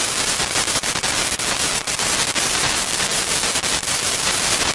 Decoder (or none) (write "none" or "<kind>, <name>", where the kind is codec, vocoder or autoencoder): none